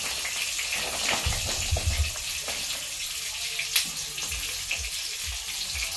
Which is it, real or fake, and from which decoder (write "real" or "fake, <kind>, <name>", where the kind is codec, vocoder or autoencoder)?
real